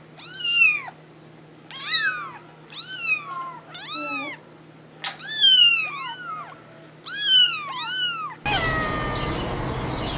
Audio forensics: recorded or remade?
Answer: recorded